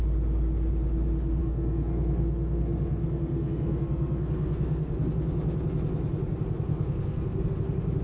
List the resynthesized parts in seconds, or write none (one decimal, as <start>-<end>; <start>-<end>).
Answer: 1.4-5.1; 6.7-7.5